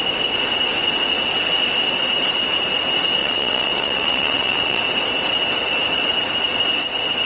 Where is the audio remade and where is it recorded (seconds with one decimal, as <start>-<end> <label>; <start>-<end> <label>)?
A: 0.0-3.2 recorded; 3.2-4.8 remade; 4.8-7.2 recorded